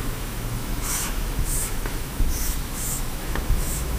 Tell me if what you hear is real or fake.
fake